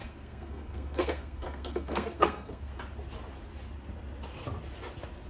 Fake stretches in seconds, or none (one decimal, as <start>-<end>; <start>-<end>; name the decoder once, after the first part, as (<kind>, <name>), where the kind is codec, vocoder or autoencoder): 0.0-2.7 (codec, SNAC)